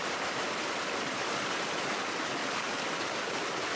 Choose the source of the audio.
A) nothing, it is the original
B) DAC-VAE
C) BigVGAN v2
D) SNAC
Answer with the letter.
A